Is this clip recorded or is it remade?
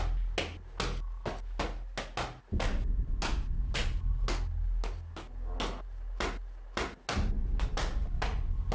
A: recorded